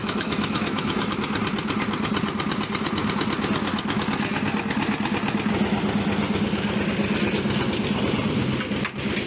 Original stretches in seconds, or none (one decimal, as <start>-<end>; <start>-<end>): 1.1-9.3

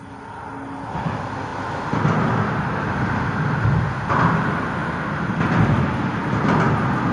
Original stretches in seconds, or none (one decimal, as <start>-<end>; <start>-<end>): 0.0-7.1

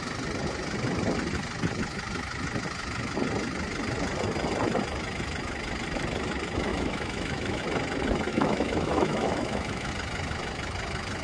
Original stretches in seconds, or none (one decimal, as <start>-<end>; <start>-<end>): 0.0-6.7; 7.6-8.3; 9.9-11.2

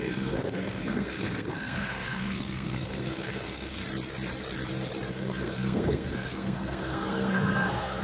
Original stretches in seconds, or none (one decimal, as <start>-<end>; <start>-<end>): 3.8-5.1

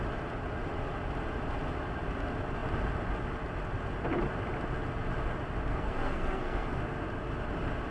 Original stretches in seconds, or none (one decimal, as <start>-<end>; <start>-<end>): 0.0-5.7; 6.8-7.9

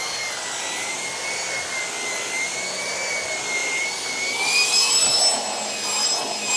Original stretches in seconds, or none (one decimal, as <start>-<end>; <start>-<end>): 0.0-3.6; 5.2-6.6

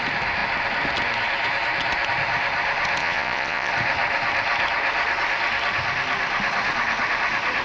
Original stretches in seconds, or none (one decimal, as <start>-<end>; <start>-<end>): 0.0-3.0; 3.7-7.6